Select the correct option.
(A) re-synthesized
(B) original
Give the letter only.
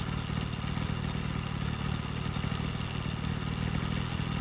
B